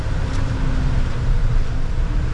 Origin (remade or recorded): recorded